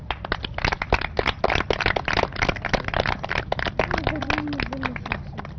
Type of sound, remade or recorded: recorded